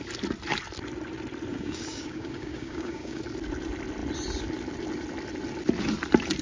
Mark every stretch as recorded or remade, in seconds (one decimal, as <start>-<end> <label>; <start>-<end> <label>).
0.0-1.5 recorded; 1.5-3.2 remade; 3.2-6.4 recorded